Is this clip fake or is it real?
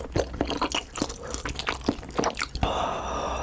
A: real